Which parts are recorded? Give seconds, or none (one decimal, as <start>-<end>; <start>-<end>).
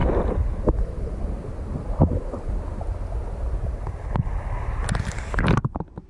0.0-6.1